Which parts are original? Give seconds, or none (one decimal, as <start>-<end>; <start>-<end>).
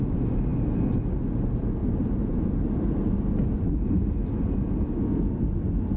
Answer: 0.0-6.0